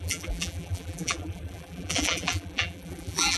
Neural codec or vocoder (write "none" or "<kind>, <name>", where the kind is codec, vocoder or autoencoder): vocoder, BigVGAN v2